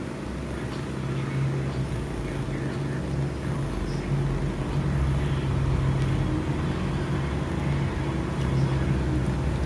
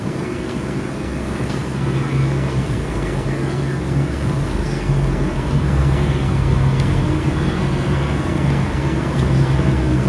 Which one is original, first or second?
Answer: first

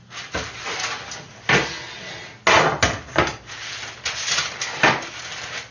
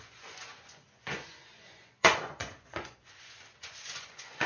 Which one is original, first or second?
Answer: first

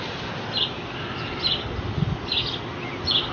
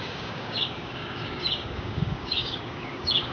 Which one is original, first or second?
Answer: first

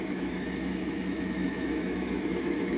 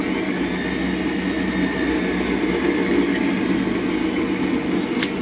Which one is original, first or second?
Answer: second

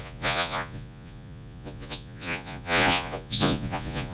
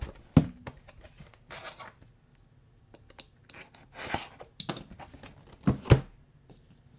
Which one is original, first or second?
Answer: second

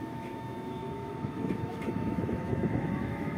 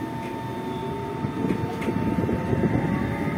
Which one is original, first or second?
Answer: second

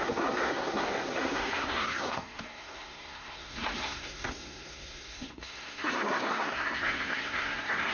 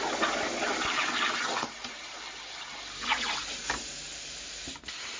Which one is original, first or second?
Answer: second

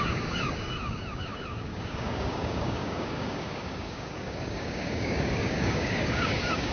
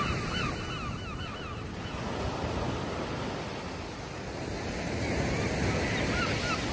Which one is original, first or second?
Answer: second